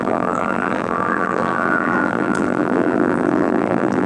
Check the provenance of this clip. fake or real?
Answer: fake